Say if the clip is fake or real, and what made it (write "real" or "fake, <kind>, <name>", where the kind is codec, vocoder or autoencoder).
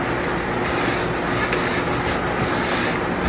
real